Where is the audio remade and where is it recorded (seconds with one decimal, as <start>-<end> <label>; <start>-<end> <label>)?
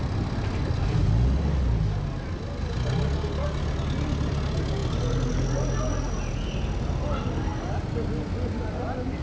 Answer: 0.0-9.2 recorded